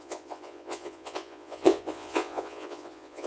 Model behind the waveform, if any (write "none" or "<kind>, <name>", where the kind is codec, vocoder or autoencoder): vocoder, Vocos